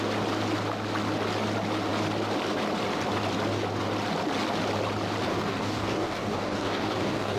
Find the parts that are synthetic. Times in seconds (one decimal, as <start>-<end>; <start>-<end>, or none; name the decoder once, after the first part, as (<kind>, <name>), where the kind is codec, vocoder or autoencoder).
5.3-7.4 (codec, DAC)